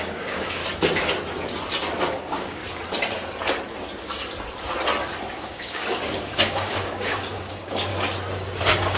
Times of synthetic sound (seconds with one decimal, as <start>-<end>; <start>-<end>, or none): 0.0-0.6; 2.2-2.6; 5.5-7.9; 8.6-9.0